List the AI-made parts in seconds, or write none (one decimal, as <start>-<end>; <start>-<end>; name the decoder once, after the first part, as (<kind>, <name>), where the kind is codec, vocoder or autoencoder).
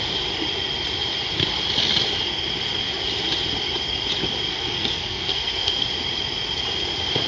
4.5-5.8 (codec, SNAC)